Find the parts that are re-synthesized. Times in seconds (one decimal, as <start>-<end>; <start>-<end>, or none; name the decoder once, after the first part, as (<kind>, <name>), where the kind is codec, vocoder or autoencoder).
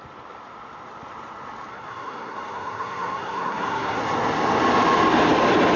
1.7-4.0 (codec, SNAC)